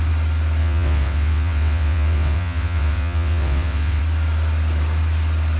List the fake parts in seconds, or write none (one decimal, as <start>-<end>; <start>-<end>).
0.6-4.0